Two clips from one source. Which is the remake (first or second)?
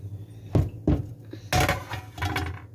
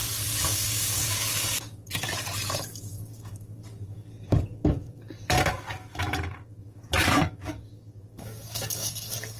second